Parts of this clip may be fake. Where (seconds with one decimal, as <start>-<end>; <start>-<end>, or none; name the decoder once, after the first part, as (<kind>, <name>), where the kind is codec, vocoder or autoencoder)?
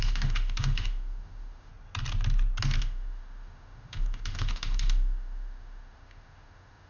0.0-1.7 (autoencoder, DAC-VAE); 2.8-6.9